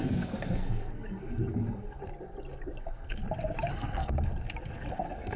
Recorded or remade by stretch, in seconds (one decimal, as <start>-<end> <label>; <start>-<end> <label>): 0.0-2.0 remade; 2.0-2.8 recorded; 2.8-3.2 remade; 3.2-3.7 recorded; 3.7-4.3 remade; 4.3-4.9 recorded; 4.9-5.4 remade